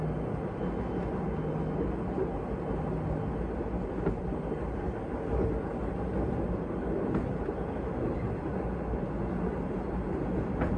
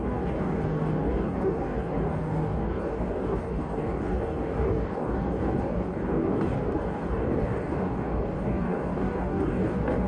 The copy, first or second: second